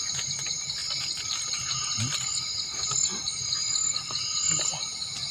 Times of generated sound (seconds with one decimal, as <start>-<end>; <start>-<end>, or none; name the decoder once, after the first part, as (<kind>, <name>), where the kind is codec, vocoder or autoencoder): none